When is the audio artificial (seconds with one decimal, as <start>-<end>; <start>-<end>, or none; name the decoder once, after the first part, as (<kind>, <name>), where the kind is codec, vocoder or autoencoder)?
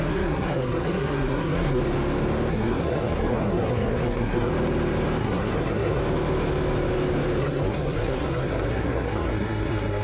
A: 0.0-1.8 (codec, SNAC); 2.5-4.5; 5.2-6.0; 7.4-10.0